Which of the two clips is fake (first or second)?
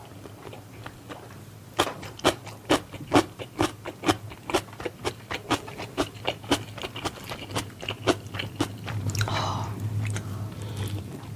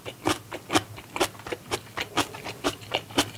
first